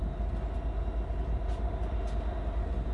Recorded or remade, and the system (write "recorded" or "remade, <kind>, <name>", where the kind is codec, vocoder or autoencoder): recorded